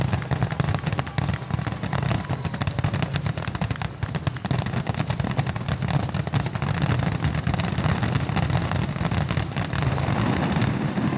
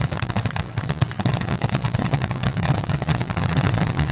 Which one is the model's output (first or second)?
second